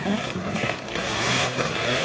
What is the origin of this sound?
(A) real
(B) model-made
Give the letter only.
B